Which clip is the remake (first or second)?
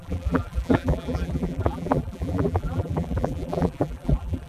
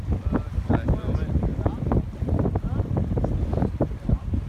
first